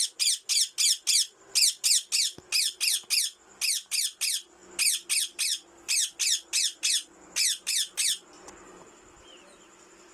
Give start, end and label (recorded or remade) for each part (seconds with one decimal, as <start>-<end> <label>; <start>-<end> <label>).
0.0-10.1 recorded

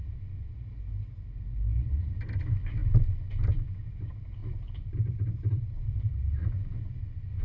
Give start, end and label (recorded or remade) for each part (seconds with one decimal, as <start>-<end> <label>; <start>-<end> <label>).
0.0-4.4 recorded; 4.4-6.1 remade; 6.1-7.4 recorded

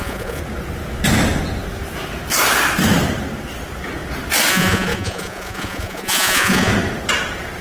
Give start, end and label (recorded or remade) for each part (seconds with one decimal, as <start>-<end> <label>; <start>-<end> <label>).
0.0-0.4 remade; 0.4-4.5 recorded; 4.5-6.7 remade; 6.7-7.6 recorded

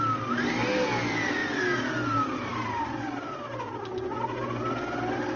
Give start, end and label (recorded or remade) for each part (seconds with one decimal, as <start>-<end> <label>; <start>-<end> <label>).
0.0-5.4 recorded